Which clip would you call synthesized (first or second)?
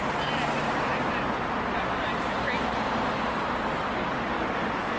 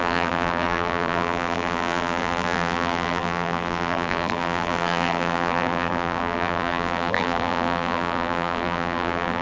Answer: second